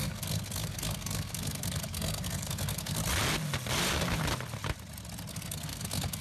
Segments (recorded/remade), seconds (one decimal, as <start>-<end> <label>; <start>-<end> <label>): 0.0-3.0 remade; 3.0-5.3 recorded; 5.3-6.2 remade